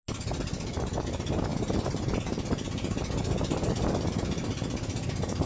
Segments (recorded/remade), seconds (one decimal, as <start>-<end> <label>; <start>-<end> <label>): 0.0-5.5 recorded